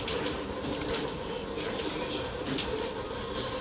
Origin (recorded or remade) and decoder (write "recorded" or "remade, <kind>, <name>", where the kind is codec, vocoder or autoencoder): recorded